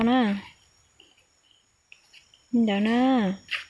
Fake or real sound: real